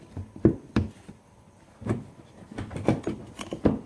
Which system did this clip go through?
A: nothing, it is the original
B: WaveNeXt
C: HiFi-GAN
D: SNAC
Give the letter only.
A